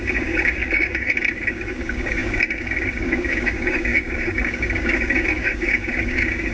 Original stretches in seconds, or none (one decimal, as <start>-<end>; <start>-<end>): none